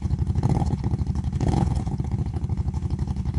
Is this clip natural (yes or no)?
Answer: no